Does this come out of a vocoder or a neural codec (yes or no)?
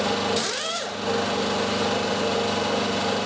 no